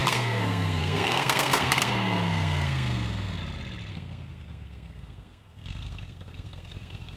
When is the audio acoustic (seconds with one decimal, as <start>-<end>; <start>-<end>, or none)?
3.4-3.9